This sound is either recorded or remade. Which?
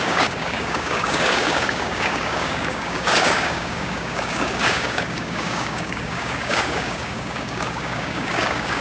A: remade